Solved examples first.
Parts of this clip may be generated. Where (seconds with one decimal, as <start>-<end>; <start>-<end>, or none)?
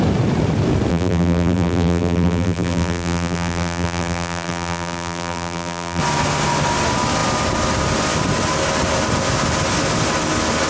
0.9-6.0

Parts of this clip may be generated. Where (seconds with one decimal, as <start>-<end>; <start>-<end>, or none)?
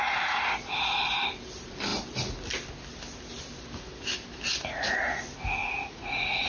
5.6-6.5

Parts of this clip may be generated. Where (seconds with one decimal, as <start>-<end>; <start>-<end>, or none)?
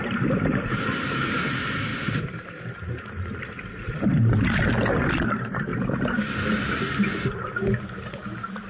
none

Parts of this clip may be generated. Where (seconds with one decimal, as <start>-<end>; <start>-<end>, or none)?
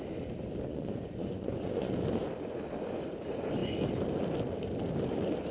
0.7-1.9